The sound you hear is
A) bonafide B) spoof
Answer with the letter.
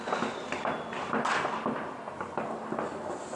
A